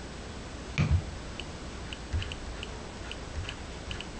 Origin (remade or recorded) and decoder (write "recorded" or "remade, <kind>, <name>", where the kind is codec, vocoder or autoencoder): recorded